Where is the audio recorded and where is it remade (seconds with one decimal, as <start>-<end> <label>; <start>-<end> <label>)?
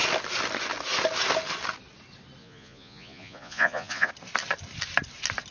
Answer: 0.0-2.4 recorded; 2.4-4.1 remade; 4.1-5.5 recorded